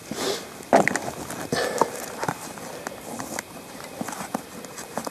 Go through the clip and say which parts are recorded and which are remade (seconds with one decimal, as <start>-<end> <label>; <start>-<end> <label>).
0.0-5.1 recorded